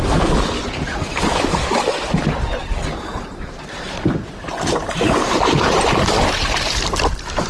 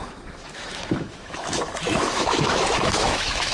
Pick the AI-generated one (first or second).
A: second